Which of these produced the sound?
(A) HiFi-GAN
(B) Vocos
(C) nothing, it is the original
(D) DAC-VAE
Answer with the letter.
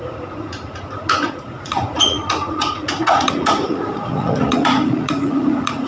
B